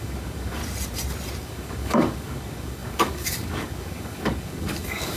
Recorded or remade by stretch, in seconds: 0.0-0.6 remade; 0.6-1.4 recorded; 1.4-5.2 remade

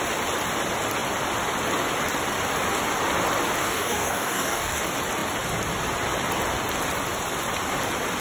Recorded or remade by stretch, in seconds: 0.0-3.6 recorded; 3.6-4.8 remade; 4.8-8.2 recorded

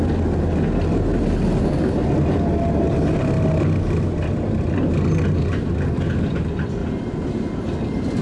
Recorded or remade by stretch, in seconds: 0.0-8.2 recorded